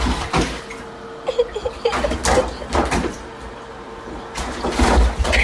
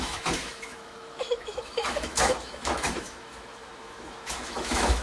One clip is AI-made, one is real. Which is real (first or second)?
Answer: first